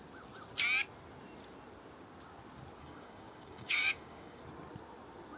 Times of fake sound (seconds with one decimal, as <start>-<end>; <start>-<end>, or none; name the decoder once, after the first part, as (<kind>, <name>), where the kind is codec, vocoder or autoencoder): 2.8-4.4 (codec, DAC)